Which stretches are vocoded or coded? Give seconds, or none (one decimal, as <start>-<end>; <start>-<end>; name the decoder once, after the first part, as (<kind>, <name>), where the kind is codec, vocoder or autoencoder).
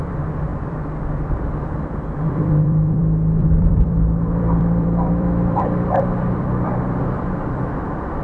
0.0-8.2 (vocoder, BigVGAN v2)